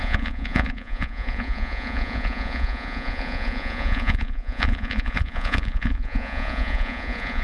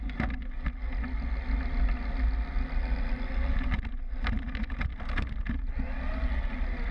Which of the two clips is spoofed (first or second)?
first